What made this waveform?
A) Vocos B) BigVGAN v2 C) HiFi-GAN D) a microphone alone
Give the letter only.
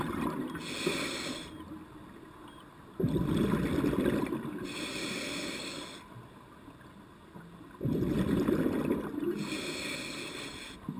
D